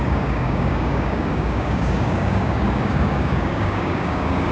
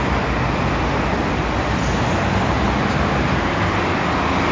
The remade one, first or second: first